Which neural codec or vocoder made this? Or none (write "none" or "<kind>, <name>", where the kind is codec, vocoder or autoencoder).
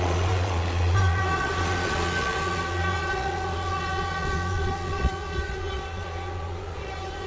vocoder, Vocos